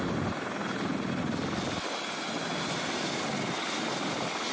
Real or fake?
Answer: real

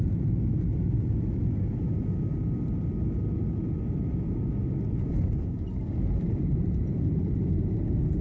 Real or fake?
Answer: real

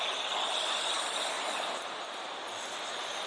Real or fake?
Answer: real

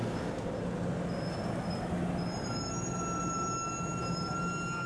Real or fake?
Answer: real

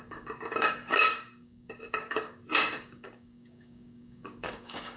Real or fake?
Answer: fake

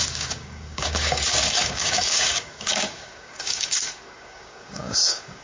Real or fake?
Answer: fake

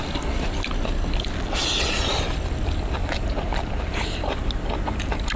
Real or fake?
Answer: real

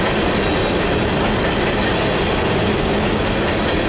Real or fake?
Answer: real